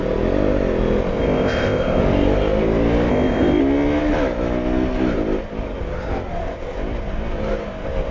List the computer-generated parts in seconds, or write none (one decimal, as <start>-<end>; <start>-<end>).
1.2-2.0; 3.1-3.6